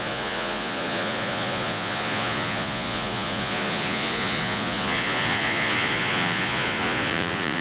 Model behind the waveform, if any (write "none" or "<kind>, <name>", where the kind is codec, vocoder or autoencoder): vocoder, Vocos